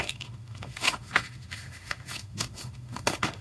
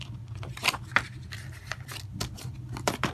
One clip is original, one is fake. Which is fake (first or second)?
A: first